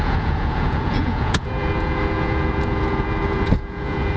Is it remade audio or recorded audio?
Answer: remade